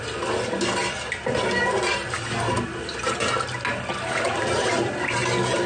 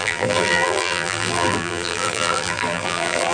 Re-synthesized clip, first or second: second